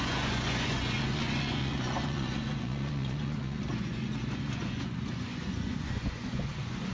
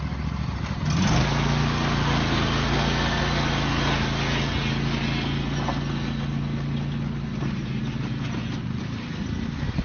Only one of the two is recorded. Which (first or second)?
second